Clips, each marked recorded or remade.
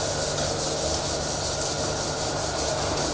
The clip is recorded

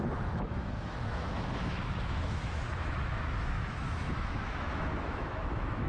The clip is remade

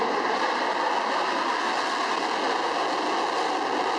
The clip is recorded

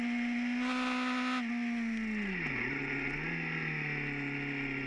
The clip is recorded